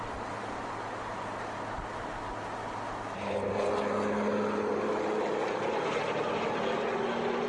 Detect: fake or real real